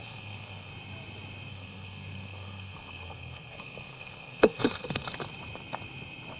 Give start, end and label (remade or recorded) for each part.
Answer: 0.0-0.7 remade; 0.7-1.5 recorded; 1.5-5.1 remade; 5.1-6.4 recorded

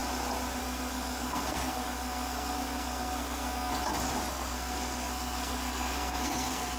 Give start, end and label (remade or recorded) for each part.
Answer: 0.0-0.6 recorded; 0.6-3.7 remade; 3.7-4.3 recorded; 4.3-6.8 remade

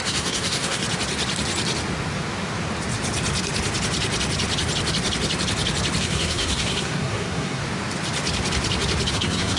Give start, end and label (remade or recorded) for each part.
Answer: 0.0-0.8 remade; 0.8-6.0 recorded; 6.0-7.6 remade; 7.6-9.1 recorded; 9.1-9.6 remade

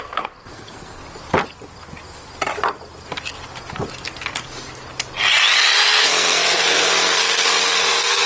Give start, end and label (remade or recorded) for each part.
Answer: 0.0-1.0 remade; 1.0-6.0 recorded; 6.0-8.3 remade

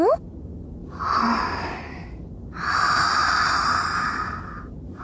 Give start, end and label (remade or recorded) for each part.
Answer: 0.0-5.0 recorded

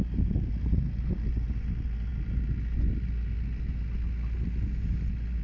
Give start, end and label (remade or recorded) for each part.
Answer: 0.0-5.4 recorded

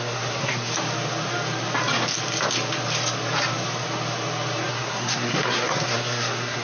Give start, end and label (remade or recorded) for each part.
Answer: 0.0-0.7 remade; 0.7-4.7 recorded; 4.7-6.6 remade

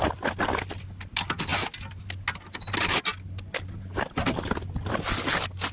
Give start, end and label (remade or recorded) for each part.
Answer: 0.0-5.7 recorded